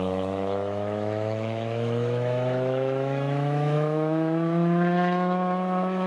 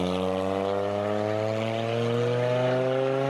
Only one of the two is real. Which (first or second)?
second